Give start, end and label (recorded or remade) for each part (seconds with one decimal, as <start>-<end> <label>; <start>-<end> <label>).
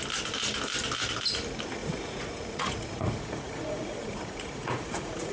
0.0-1.8 recorded; 1.8-5.3 remade